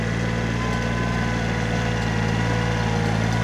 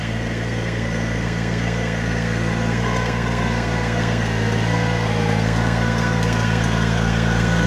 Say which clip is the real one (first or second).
first